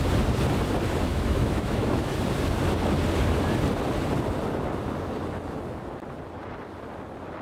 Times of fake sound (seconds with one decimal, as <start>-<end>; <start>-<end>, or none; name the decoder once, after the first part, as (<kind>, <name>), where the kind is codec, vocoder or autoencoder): 1.1-2.2 (autoencoder, DAC-VAE)

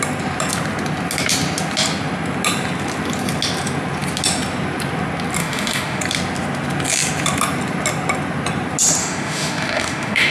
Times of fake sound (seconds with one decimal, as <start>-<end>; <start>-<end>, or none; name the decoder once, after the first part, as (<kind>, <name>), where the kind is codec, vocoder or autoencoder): 5.4-6.0 (autoencoder, DAC-VAE); 9.0-10.3

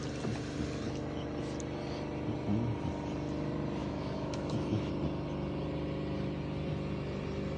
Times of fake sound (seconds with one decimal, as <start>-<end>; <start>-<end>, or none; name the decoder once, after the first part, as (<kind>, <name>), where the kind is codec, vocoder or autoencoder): 3.8-4.9 (autoencoder, DAC-VAE)

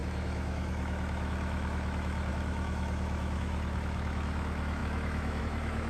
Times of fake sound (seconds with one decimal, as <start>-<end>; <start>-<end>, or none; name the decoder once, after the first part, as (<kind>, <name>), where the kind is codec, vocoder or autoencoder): 0.0-5.9 (autoencoder, DAC-VAE)

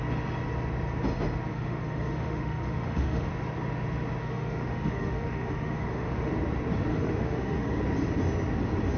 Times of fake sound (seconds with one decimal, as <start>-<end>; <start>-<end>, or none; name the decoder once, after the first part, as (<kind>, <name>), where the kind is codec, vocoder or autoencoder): 1.5-3.3 (autoencoder, DAC-VAE); 4.2-6.3; 6.9-7.8

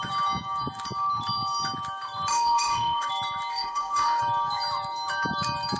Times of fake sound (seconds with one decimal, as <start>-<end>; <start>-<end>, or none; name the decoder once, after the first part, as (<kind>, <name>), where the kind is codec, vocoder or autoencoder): 2.3-3.1 (autoencoder, DAC-VAE); 3.5-4.2

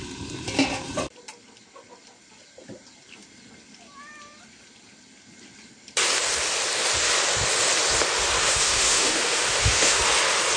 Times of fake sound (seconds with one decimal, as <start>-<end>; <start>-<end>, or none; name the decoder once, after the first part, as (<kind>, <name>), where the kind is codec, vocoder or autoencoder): 8.4-10.0 (autoencoder, DAC-VAE)